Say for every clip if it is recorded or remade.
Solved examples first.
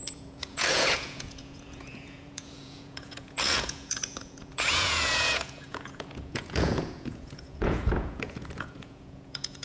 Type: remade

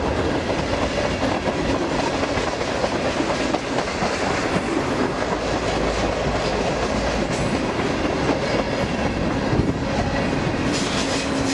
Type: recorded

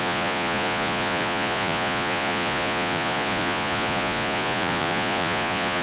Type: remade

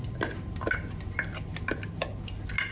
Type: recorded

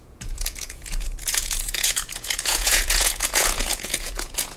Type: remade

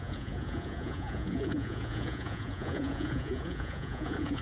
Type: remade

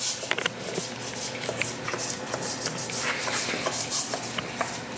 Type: recorded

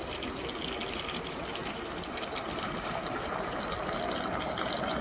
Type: recorded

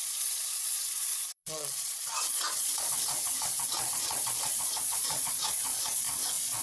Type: remade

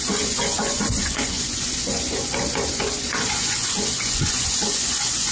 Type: remade